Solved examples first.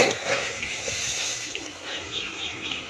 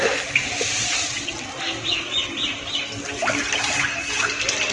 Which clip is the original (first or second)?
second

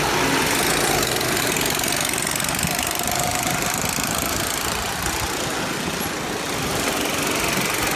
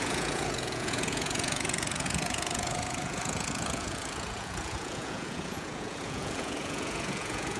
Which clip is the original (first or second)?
first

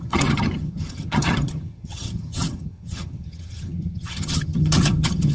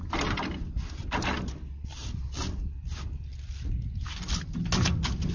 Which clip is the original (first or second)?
second